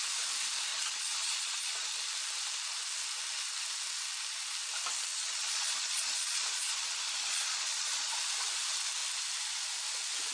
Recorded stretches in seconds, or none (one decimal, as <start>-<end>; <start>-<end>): 0.0-0.7; 1.9-5.1; 8.1-10.3